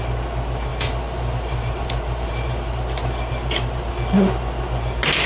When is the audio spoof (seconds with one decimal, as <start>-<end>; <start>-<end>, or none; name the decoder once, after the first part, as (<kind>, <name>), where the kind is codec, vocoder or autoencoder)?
0.7-3.9 (vocoder, BigVGAN v2)